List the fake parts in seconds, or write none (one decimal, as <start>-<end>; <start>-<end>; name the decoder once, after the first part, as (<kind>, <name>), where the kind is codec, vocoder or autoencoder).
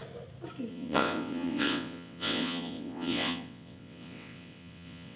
0.7-5.2 (vocoder, WaveNeXt)